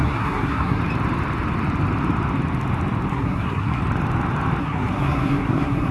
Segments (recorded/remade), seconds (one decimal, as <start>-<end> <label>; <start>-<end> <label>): 0.0-0.8 remade; 0.8-3.1 recorded; 3.1-3.8 remade; 3.8-4.6 recorded; 4.6-5.9 remade